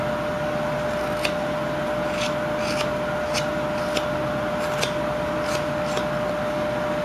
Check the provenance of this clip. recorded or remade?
recorded